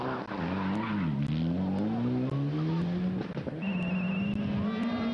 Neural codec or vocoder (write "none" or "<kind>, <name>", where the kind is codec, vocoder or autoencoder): none